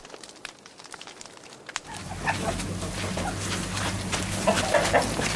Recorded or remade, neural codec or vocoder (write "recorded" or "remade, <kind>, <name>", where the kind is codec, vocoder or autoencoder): recorded